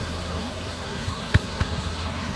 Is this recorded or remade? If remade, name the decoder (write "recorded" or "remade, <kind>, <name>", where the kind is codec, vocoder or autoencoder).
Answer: remade, codec, SNAC